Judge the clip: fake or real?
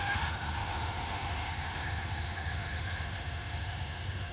fake